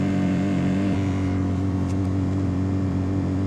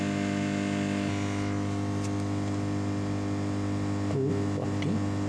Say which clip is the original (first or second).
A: second